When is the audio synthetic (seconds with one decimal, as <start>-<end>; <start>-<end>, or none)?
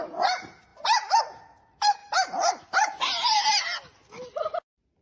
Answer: 0.7-1.2